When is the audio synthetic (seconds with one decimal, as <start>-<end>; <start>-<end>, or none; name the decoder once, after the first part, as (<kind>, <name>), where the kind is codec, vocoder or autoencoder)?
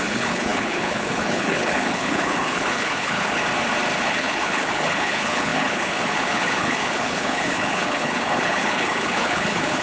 0.0-3.4 (codec, HILCodec); 4.0-9.8